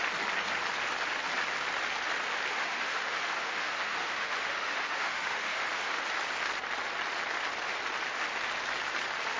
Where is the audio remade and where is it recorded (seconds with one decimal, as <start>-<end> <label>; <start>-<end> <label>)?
0.0-2.5 recorded; 2.5-6.0 remade; 6.0-9.4 recorded